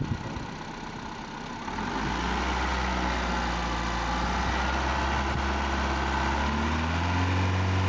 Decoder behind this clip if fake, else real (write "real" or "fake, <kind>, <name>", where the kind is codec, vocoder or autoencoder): real